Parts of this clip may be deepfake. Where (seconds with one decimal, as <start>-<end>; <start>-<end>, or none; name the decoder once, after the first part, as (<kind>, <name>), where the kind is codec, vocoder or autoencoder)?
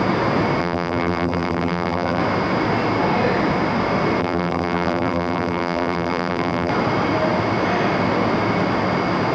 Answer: 0.6-2.2 (vocoder, BigVGAN v2); 4.2-6.7